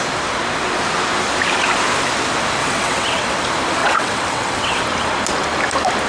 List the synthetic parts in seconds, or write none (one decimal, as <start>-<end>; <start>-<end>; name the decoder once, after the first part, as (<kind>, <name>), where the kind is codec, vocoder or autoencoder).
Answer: 2.6-3.4 (vocoder, WaveNeXt); 3.8-4.8